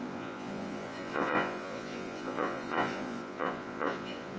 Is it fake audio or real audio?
fake